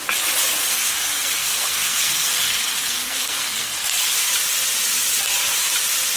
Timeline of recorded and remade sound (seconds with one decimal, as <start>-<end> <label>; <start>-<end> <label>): 0.0-0.6 recorded; 0.6-4.3 remade; 4.3-6.2 recorded